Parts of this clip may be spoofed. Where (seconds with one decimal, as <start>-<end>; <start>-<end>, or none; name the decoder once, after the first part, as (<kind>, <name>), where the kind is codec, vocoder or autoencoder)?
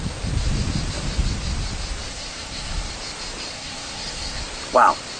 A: 2.1-2.9 (codec, SNAC); 3.5-4.4